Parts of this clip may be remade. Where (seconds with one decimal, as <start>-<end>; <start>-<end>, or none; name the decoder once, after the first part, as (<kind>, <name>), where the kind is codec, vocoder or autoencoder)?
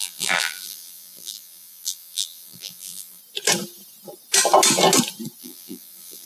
0.0-3.2 (vocoder, BigVGAN v2); 5.4-6.3